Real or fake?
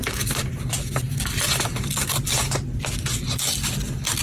real